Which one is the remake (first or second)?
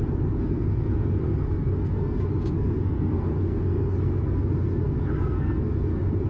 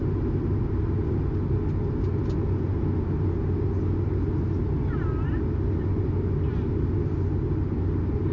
first